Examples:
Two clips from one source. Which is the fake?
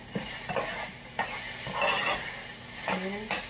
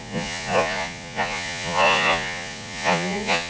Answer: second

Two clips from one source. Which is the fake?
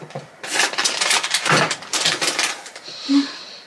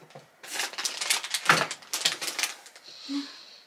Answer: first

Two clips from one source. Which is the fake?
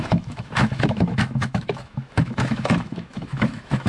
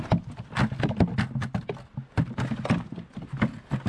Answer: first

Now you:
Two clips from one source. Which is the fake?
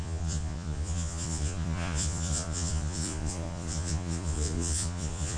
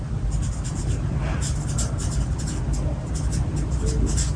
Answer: first